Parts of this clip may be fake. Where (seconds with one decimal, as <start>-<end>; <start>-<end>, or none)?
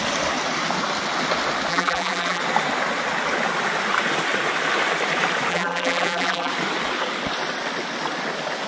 1.7-2.4; 5.5-6.5